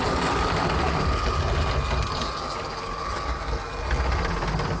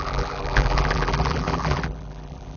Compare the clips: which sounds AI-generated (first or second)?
second